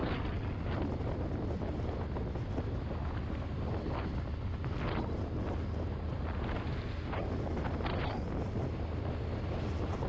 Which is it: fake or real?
real